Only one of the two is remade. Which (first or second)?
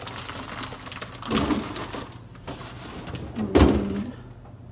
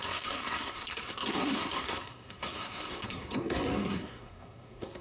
second